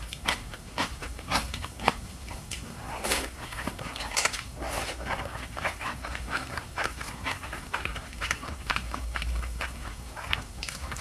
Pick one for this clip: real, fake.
fake